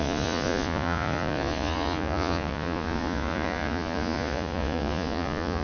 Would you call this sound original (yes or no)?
no